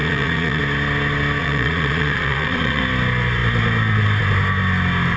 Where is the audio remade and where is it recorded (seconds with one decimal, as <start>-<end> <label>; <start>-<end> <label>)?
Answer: 0.0-0.6 remade; 0.6-1.4 recorded; 1.4-2.8 remade; 2.8-5.2 recorded